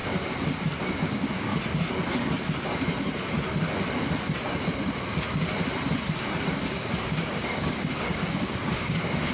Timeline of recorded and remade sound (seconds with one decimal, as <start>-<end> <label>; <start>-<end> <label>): 0.0-0.8 recorded; 0.8-1.5 remade; 1.5-6.5 recorded; 6.5-9.3 remade

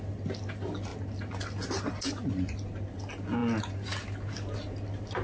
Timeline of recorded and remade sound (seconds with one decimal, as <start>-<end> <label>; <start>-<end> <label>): 0.0-5.2 recorded

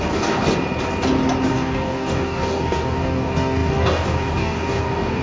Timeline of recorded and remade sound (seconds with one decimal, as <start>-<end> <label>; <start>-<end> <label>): 0.0-0.4 remade; 0.4-1.5 recorded; 1.5-5.2 remade

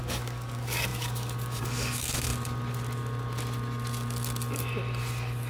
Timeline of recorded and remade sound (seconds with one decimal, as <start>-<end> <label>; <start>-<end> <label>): 0.0-2.3 remade; 2.3-5.5 recorded

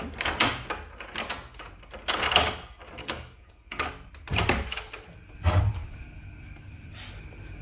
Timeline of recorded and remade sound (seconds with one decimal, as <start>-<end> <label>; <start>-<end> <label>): 0.0-3.0 recorded; 3.0-3.9 remade; 3.9-5.8 recorded; 5.8-6.7 remade; 6.7-7.6 recorded

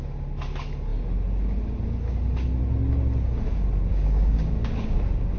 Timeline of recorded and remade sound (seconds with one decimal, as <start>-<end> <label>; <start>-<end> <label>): 0.0-3.9 recorded; 3.9-5.0 remade; 5.0-5.4 recorded

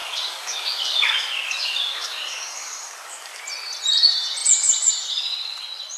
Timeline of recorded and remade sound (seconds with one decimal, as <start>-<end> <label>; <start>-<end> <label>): 0.0-3.4 remade; 3.4-6.0 recorded